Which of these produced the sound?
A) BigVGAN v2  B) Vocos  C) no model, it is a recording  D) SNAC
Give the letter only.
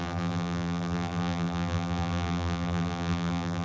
A